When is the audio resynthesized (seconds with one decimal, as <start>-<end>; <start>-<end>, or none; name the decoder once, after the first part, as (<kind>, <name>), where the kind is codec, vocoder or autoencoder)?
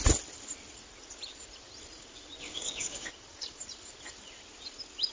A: 2.4-3.1 (codec, DAC)